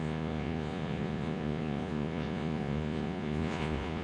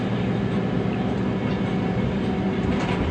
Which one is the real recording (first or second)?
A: second